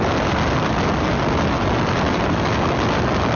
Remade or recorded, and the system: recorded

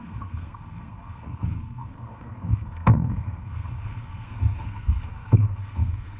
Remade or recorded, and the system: remade, codec, SNAC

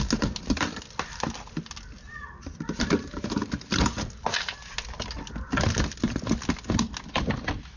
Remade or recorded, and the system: recorded